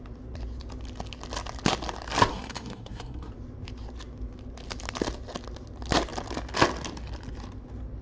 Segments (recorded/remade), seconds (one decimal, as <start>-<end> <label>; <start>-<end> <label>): 0.0-2.3 recorded; 2.3-3.3 remade; 3.3-8.0 recorded

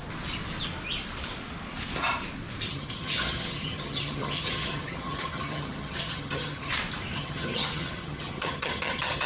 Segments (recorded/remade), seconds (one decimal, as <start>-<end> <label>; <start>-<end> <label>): 0.0-2.7 recorded; 2.7-6.7 remade; 6.7-7.2 recorded; 7.2-9.3 remade

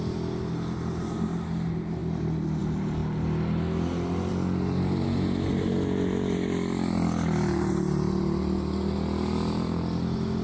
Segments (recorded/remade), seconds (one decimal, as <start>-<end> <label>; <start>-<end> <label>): 0.0-10.4 recorded

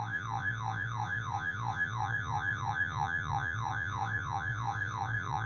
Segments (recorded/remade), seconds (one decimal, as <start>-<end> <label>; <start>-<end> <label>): 0.0-5.5 remade

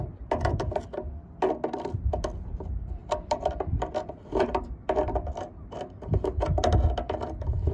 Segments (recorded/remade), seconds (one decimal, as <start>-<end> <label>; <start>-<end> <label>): 0.0-3.0 recorded; 3.0-4.6 remade; 4.6-7.7 recorded

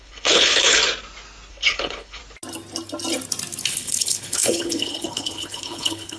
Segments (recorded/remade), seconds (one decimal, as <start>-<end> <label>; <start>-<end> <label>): 0.0-0.8 remade; 0.8-1.5 recorded; 1.5-2.2 remade; 2.2-3.7 recorded; 3.7-6.2 remade

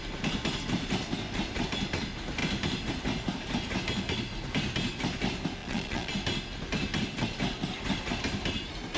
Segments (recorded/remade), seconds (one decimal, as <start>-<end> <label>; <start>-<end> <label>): 0.0-5.6 recorded; 5.6-6.1 remade; 6.1-9.0 recorded